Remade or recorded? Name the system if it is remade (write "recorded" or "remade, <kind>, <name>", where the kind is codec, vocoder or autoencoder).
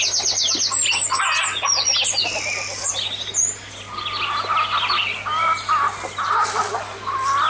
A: recorded